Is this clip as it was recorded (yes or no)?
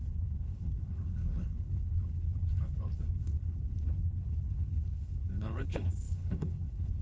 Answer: no